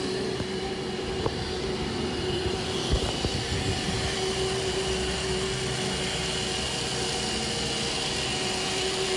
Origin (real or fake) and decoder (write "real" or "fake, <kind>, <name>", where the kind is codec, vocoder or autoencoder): real